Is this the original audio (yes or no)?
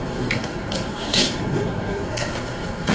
no